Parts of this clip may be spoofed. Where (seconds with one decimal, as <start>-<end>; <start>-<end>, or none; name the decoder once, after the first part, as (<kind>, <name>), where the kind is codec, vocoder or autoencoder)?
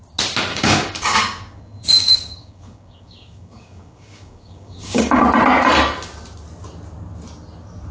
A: 0.5-5.2 (codec, DAC)